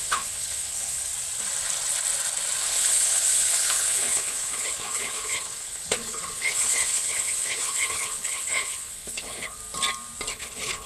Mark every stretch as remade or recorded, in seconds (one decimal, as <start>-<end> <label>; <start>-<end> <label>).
0.0-1.1 remade; 1.1-2.6 recorded; 2.6-9.6 remade; 9.6-10.3 recorded; 10.3-10.9 remade